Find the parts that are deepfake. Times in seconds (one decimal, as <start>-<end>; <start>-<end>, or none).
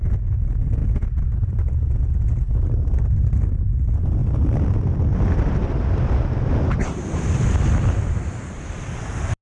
4.2-8.1